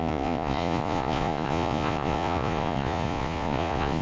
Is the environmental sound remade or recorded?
remade